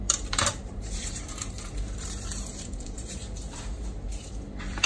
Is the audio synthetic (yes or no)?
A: yes